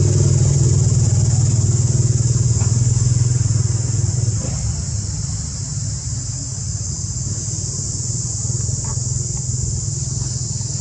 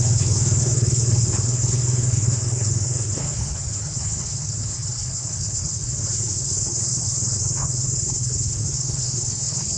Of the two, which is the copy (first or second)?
second